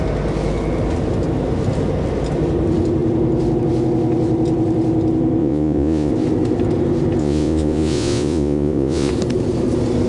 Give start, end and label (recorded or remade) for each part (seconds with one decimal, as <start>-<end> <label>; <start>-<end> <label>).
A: 0.0-5.4 recorded; 5.4-6.1 remade; 6.1-7.2 recorded; 7.2-9.1 remade; 9.1-10.1 recorded

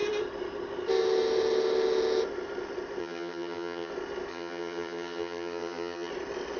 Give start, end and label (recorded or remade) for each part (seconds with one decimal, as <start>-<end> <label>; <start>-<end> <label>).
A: 0.0-3.0 recorded; 3.0-3.9 remade; 3.9-4.3 recorded; 4.3-6.1 remade; 6.1-6.6 recorded

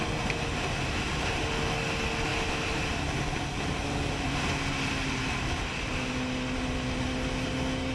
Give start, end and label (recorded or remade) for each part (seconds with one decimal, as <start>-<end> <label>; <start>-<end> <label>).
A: 0.0-7.9 recorded

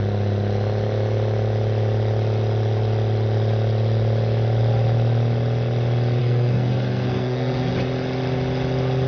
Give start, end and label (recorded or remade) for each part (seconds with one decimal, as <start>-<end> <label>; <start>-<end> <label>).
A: 0.0-6.2 recorded; 6.2-7.7 remade; 7.7-9.1 recorded